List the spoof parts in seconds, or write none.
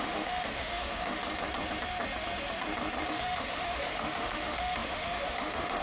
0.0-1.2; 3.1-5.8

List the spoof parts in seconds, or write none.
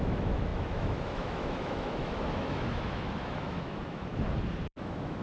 0.0-4.1; 4.7-5.2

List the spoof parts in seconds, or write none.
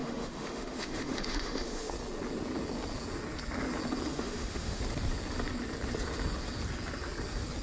0.0-1.9; 4.1-4.8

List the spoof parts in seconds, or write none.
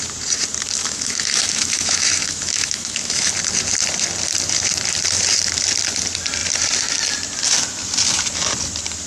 0.8-3.3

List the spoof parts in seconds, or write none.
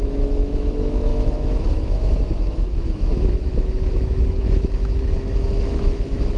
0.0-6.4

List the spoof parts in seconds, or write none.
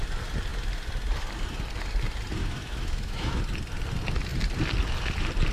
2.4-3.4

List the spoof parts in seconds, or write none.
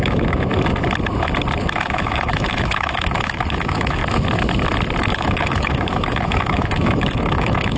0.0-0.5; 1.7-4.0; 5.1-7.8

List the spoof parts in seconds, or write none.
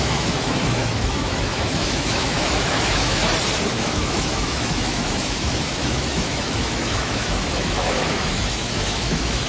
0.0-3.2; 3.7-9.5